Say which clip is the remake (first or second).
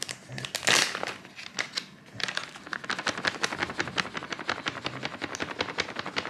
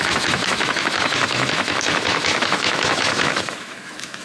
second